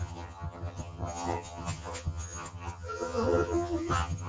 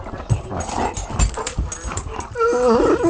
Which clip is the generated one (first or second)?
first